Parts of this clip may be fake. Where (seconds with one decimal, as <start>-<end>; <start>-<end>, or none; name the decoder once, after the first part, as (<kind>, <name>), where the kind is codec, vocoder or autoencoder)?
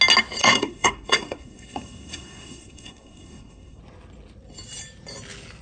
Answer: 0.4-3.8 (codec, SNAC)